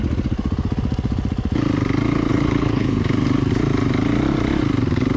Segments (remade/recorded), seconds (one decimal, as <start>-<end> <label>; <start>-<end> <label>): 0.0-2.3 recorded; 2.3-3.0 remade; 3.0-5.2 recorded